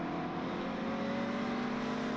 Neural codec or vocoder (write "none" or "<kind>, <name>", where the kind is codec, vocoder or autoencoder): none